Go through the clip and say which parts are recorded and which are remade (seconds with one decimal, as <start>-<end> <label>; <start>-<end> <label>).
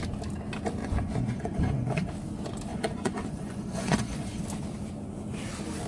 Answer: 0.0-0.8 recorded; 0.8-2.1 remade; 2.1-2.7 recorded; 2.7-4.4 remade; 4.4-5.9 recorded